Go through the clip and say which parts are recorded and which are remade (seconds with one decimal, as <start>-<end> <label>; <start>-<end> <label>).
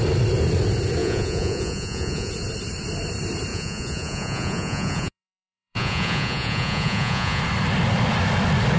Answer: 0.0-1.0 recorded; 1.0-2.3 remade; 2.3-3.5 recorded; 3.5-7.4 remade; 7.4-8.8 recorded